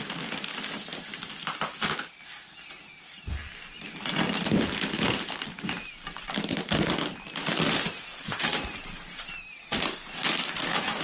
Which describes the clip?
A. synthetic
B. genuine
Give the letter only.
B